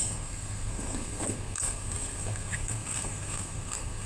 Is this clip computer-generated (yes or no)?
yes